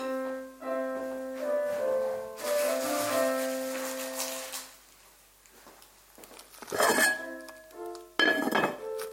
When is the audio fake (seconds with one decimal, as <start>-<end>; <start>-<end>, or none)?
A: none